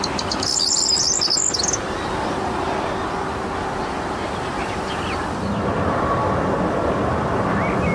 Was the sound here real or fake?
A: real